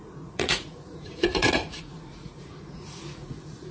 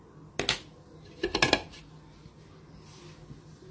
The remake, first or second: first